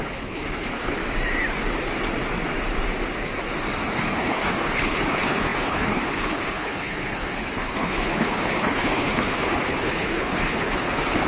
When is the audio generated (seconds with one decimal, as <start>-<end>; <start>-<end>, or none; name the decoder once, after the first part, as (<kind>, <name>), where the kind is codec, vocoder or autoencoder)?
0.0-1.0 (codec, HILCodec); 4.0-11.3